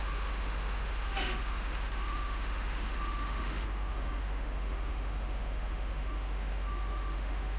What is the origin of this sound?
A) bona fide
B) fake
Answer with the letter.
B